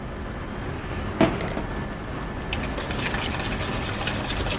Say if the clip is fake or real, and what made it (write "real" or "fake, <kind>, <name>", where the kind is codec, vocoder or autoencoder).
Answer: real